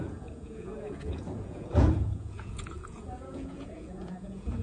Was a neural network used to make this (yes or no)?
yes